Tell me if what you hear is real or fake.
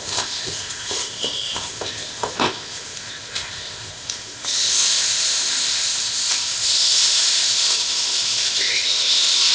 fake